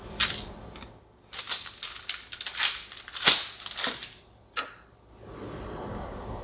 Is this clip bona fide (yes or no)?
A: yes